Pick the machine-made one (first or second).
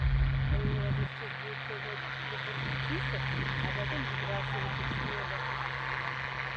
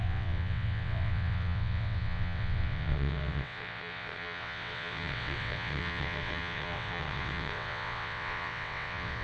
second